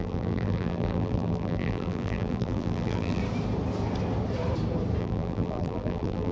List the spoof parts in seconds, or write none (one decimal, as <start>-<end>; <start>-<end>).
0.0-3.2; 5.0-6.3